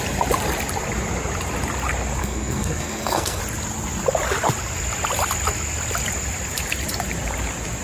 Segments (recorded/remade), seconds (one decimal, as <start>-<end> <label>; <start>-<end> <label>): 0.0-2.2 recorded; 2.2-3.4 remade; 3.4-7.8 recorded